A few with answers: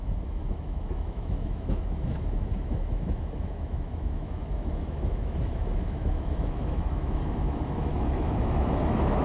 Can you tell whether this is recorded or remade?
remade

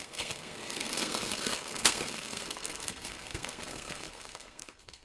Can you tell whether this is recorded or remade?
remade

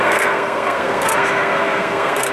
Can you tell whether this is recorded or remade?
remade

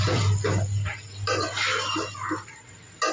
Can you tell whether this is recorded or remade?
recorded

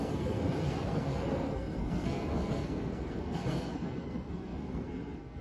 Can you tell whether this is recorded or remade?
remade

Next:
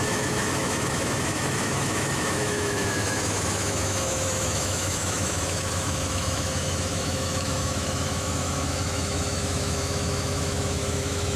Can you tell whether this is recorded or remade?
remade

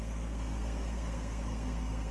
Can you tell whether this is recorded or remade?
remade